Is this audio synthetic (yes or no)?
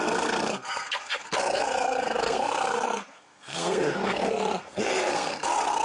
yes